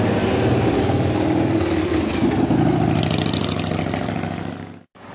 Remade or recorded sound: recorded